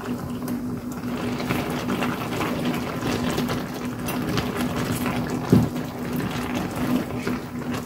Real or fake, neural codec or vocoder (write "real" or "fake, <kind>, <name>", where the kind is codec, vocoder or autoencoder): real